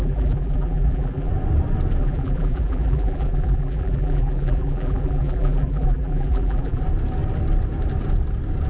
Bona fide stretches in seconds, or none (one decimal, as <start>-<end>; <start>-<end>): 1.3-2.0; 6.8-8.7